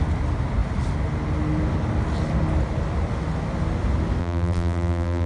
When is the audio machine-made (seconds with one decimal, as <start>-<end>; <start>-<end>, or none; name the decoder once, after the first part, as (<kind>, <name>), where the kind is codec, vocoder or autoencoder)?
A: 4.2-5.3 (vocoder, BigVGAN v2)